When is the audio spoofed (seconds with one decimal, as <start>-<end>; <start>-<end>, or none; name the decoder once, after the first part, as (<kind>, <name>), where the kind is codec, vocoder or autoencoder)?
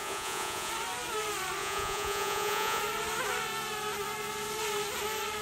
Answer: 0.0-0.7 (vocoder, Vocos); 1.6-2.8